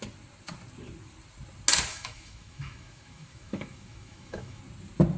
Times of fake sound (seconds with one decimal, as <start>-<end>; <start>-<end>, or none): 1.9-4.6